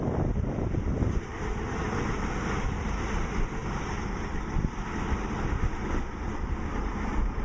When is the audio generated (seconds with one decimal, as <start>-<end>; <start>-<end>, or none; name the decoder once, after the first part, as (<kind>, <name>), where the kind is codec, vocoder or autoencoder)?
none